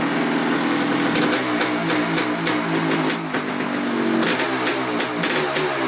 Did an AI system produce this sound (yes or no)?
no